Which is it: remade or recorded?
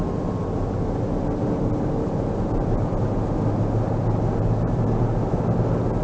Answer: recorded